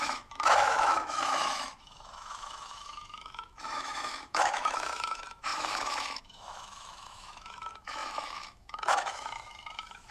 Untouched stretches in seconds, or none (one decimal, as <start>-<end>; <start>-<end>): none